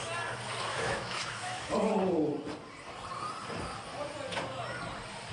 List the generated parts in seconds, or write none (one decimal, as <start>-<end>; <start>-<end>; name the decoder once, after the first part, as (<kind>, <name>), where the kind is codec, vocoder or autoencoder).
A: 0.7-1.6 (autoencoder, DAC-VAE)